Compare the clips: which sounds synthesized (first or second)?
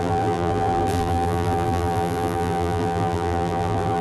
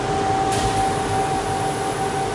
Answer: first